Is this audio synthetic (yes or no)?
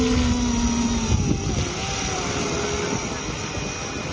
no